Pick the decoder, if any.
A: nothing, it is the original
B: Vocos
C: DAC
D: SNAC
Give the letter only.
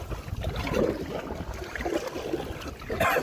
A